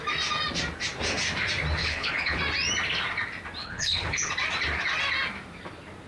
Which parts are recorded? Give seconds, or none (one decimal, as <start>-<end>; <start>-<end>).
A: 0.0-1.8; 2.4-3.6; 4.3-6.1